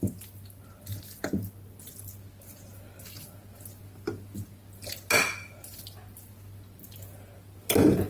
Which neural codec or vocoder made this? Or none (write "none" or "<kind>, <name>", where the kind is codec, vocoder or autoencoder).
none